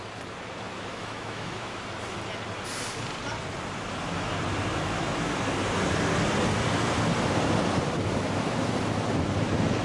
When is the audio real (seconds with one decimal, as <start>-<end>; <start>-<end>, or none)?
0.0-0.9; 1.8-4.7; 5.3-9.8